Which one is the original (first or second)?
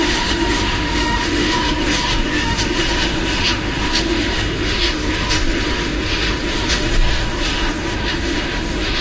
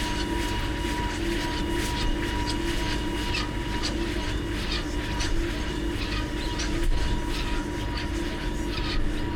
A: second